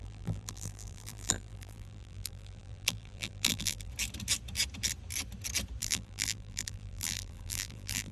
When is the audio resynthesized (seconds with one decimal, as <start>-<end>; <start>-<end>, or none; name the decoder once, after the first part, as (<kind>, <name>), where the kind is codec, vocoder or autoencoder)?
0.0-3.9 (vocoder, BigVGAN v2); 5.8-8.1